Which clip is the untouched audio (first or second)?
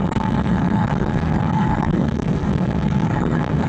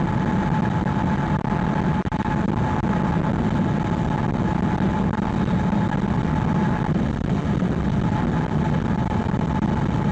second